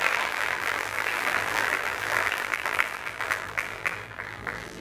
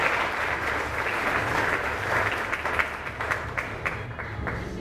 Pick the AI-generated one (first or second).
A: first